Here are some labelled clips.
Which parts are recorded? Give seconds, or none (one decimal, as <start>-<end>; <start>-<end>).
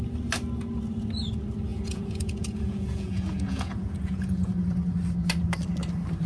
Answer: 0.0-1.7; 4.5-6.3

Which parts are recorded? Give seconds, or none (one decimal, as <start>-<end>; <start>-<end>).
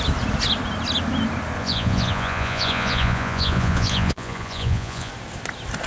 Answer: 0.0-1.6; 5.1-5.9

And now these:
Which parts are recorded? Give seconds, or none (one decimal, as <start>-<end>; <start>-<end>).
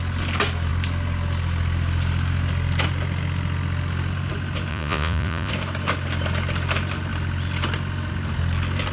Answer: 0.0-4.7; 5.5-8.9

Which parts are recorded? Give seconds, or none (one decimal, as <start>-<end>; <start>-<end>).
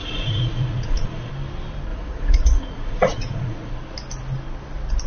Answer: 1.3-1.9; 3.7-5.1